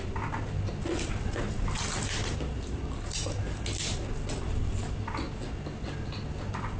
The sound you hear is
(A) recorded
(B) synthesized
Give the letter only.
A